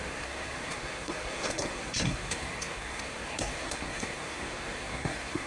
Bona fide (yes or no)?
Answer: no